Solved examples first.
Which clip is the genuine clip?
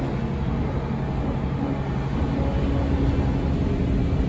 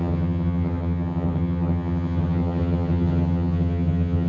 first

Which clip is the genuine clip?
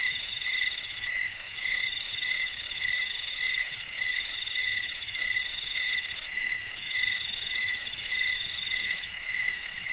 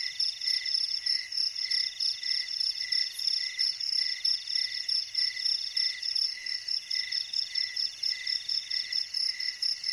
second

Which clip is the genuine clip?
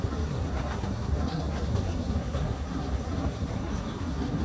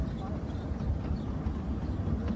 second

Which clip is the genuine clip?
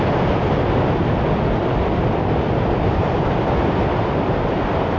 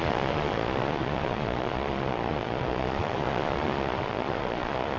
first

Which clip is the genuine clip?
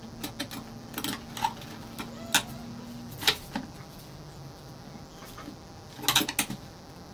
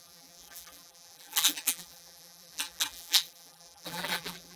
first